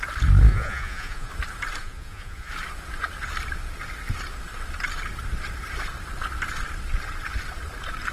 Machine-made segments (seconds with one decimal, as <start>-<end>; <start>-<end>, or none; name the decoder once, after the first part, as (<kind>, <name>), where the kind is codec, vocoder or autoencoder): 0.5-1.3 (vocoder, Vocos); 1.8-2.5